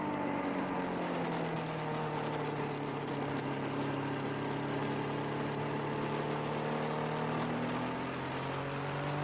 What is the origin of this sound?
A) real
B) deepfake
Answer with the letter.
A